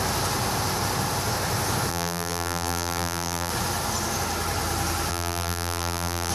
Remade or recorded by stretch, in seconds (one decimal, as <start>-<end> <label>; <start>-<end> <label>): 0.0-1.9 recorded; 1.9-3.5 remade; 3.5-5.1 recorded; 5.1-6.3 remade